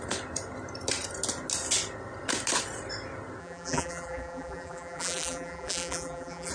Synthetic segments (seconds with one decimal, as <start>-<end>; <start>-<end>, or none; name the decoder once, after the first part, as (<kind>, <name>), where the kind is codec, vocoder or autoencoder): 3.4-6.5 (vocoder, BigVGAN v2)